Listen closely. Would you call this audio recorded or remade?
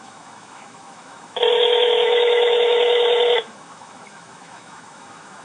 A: remade